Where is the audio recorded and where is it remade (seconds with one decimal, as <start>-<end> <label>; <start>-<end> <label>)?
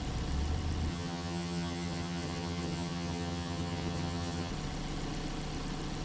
0.0-0.9 recorded; 0.9-4.5 remade; 4.5-6.0 recorded